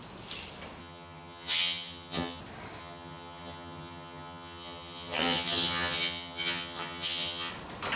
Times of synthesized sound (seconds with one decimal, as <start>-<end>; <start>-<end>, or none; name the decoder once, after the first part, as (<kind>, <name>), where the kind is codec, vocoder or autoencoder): 0.8-2.4 (vocoder, HiFi-GAN); 2.8-7.5